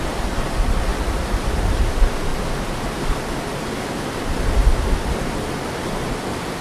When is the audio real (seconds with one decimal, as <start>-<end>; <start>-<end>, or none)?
0.9-1.4; 2.3-6.6